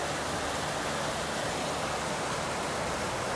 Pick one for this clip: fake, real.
real